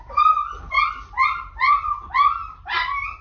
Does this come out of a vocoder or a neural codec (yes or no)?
no